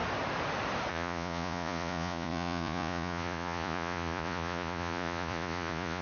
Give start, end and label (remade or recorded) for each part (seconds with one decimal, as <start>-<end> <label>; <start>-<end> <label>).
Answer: 0.0-0.9 recorded; 0.9-6.0 remade